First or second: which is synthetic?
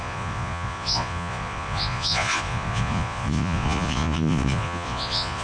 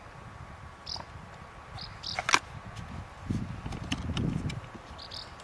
first